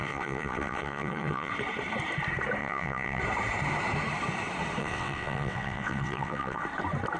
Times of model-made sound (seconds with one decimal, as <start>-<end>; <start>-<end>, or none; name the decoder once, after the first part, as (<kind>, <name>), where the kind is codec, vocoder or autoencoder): 0.0-1.5 (vocoder, WaveNeXt); 2.6-3.2; 4.8-6.6